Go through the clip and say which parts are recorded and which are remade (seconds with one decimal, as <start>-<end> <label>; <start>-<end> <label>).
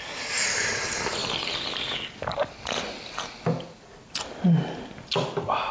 0.0-5.7 recorded